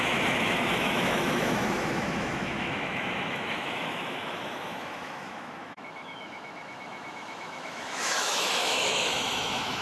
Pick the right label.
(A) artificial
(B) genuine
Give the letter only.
A